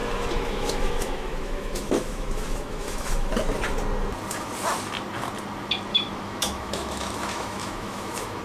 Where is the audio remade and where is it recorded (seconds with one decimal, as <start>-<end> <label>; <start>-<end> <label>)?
0.0-3.3 remade; 3.3-5.9 recorded; 5.9-8.4 remade